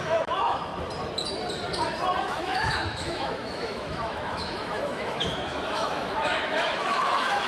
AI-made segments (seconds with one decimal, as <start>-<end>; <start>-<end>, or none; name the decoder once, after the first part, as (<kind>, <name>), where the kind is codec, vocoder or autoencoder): 0.0-0.7 (autoencoder, DAC-VAE); 2.2-7.5